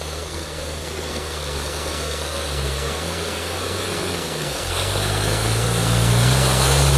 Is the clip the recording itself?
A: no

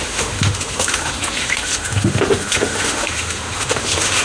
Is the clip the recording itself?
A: no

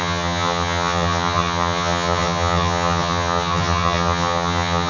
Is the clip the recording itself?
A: no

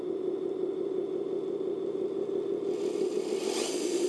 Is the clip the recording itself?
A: yes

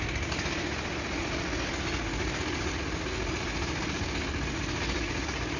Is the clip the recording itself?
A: yes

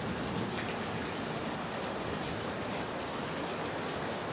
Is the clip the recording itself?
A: yes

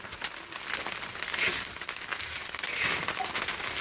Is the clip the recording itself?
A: yes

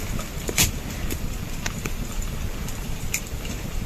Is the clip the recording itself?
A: no